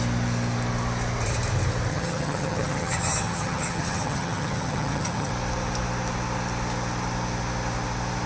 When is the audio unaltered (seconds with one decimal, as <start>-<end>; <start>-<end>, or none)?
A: 0.0-1.9; 5.3-8.3